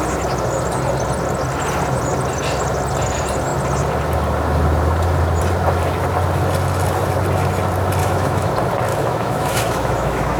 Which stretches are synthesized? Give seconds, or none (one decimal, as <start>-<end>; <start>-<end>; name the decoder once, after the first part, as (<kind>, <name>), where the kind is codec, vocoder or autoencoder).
8.0-8.5 (autoencoder, DAC-VAE); 8.9-10.4